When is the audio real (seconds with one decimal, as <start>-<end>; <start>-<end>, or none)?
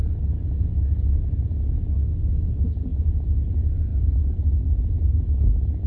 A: 0.0-5.9